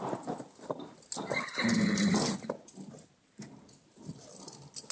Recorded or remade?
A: recorded